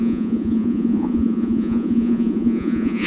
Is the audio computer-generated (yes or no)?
yes